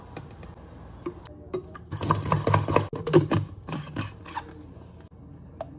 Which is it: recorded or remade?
recorded